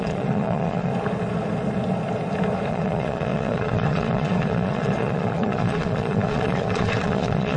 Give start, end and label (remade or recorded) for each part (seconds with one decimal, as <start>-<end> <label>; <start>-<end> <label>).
0.0-0.9 remade; 0.9-2.7 recorded; 2.7-7.6 remade

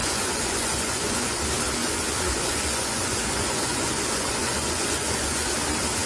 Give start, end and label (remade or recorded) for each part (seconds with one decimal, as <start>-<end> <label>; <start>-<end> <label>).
0.0-1.4 remade; 1.4-1.8 recorded; 1.8-5.5 remade; 5.5-6.1 recorded

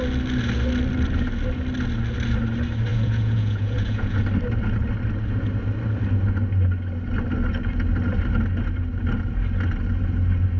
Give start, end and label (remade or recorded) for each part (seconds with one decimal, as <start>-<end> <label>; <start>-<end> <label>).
0.0-2.9 recorded; 2.9-4.2 remade; 4.2-10.6 recorded

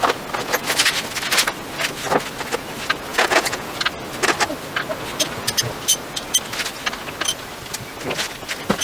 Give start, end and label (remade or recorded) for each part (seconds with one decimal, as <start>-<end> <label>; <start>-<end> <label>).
0.0-3.1 recorded; 3.1-3.8 remade; 3.8-8.8 recorded

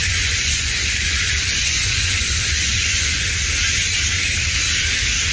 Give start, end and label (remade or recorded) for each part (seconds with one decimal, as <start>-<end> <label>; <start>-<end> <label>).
0.0-3.2 remade; 3.2-5.3 recorded

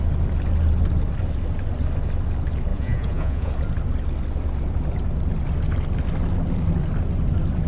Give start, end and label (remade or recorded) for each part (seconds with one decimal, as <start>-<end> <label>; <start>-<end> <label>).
0.0-2.7 recorded; 2.7-3.5 remade; 3.5-7.7 recorded